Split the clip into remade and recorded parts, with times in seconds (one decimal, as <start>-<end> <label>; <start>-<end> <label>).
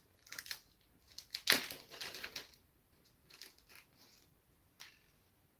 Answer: 0.0-3.2 recorded; 3.2-3.7 remade; 3.7-5.6 recorded